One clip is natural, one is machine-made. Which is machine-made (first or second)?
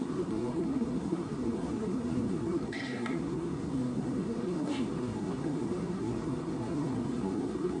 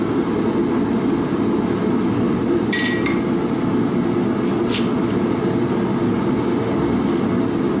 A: first